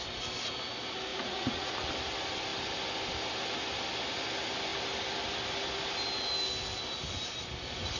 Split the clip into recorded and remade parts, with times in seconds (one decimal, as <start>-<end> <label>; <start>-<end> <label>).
0.0-1.1 recorded; 1.1-1.9 remade; 1.9-8.0 recorded